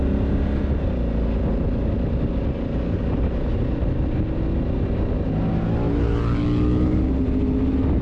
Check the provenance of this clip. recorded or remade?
recorded